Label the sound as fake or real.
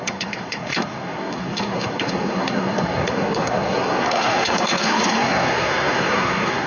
fake